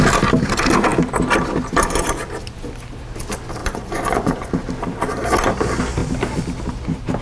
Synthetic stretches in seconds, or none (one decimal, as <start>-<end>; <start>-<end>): 3.6-4.5